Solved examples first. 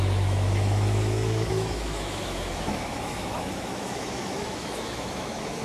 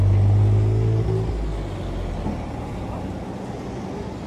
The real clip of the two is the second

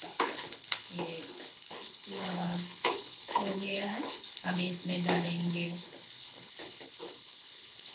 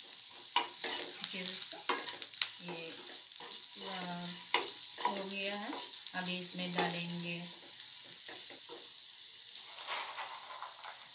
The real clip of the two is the second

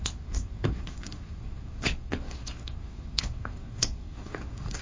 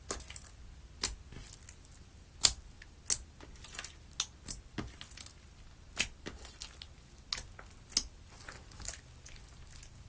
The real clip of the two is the second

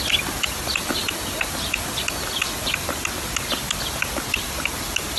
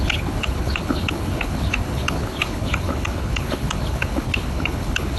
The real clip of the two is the first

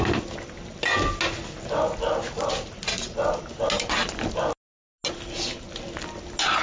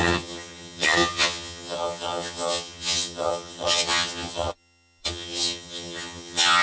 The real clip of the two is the first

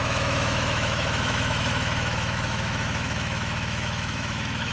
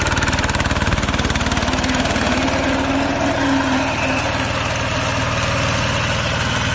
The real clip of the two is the second